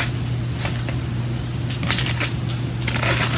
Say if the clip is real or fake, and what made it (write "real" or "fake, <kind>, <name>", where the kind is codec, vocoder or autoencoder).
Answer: real